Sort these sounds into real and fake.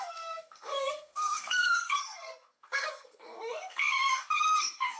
fake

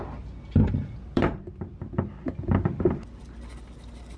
real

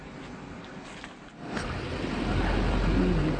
real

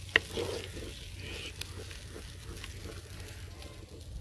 real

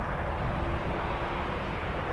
real